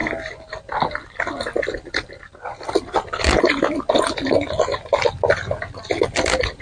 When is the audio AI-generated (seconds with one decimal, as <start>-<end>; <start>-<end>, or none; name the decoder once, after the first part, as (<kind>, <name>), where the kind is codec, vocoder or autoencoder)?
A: none